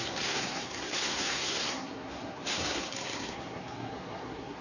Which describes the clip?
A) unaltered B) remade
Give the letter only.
B